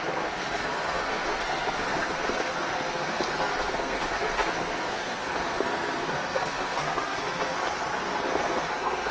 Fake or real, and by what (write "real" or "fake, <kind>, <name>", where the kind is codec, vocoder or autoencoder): fake, codec, SNAC